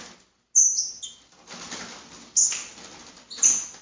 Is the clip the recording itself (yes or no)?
yes